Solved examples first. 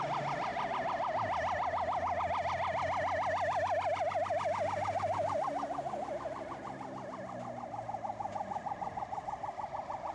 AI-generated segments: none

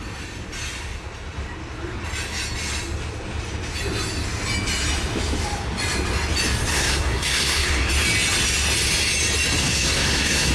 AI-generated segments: 6.7-7.9 (codec, SNAC); 9.6-10.5

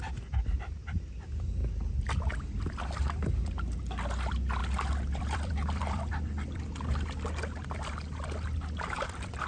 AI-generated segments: 4.6-6.6 (vocoder, BigVGAN v2)

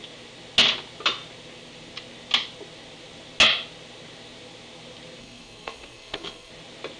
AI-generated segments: 5.2-6.5 (codec, SNAC)